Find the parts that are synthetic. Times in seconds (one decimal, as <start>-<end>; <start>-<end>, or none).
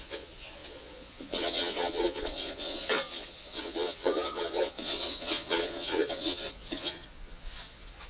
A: 0.0-8.1